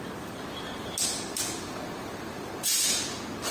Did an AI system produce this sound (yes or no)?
no